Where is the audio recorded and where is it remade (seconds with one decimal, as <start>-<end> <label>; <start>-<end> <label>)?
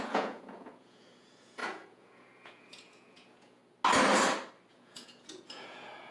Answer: 0.0-3.6 remade; 3.6-4.7 recorded; 4.7-6.1 remade